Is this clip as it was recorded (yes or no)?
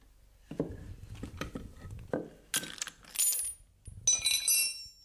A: yes